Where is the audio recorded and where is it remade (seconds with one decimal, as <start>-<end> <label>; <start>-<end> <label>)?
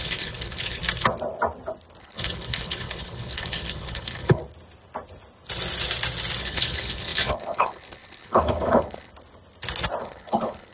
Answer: 0.0-0.8 remade; 0.8-2.0 recorded; 2.0-4.4 remade; 4.4-6.4 recorded; 6.4-9.1 remade; 9.1-10.0 recorded; 10.0-10.7 remade